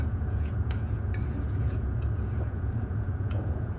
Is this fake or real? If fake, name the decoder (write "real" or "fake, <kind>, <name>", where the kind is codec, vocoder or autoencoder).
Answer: fake, vocoder, Vocos